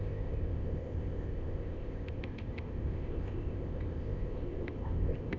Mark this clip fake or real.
fake